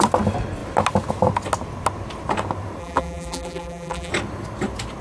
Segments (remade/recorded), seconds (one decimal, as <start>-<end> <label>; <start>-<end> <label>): 0.0-2.8 recorded; 2.8-4.1 remade; 4.1-5.0 recorded